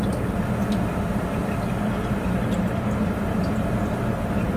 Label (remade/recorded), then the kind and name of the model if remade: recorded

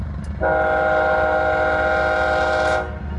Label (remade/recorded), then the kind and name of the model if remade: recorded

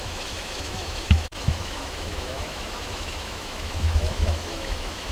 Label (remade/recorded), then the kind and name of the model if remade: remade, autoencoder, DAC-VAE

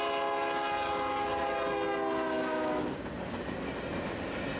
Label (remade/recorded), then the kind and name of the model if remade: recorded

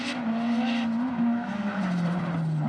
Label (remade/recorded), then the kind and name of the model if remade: recorded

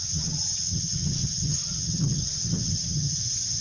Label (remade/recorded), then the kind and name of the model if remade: remade, vocoder, HiFi-GAN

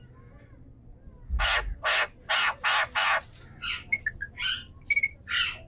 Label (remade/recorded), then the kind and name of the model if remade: recorded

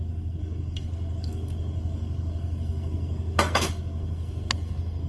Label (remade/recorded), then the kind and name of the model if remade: remade, codec, SNAC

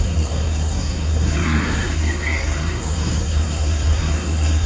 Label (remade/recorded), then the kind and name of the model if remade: remade, codec, SNAC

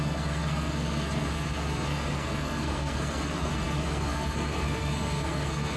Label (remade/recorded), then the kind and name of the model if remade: remade, codec, SNAC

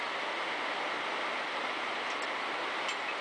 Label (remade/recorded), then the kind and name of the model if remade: recorded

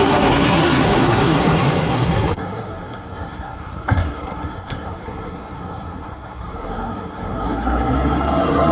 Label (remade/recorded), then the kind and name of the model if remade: remade, codec, SNAC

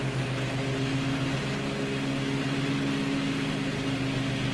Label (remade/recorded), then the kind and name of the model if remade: recorded